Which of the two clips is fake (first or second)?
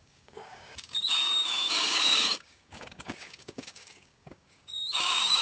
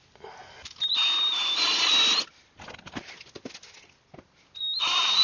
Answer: first